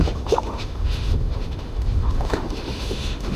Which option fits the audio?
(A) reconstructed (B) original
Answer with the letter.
A